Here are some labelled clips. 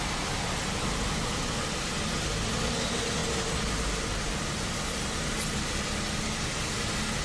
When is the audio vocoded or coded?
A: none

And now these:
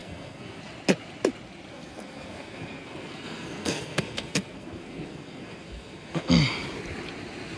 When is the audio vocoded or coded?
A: 0.0-0.6 (codec, SNAC); 1.7-6.3

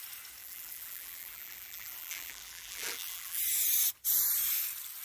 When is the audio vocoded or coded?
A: 0.4-3.4 (vocoder, BigVGAN v2)

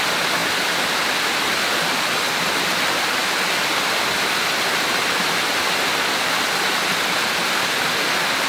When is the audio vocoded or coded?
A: none

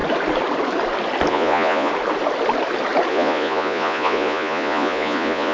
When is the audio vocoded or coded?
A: 1.3-1.9 (vocoder, Vocos); 3.1-5.5

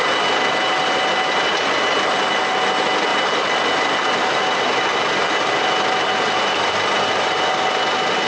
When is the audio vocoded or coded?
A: none

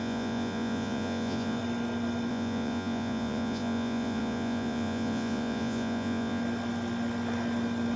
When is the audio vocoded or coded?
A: 0.0-1.6 (vocoder, Vocos); 2.3-6.4